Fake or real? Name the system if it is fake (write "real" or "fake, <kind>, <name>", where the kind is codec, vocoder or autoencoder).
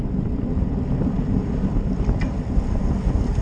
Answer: real